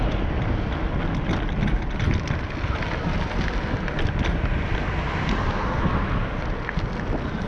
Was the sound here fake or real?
real